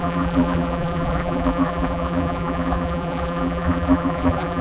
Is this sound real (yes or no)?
no